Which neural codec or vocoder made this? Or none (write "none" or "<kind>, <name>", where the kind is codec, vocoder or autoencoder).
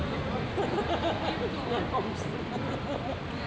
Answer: none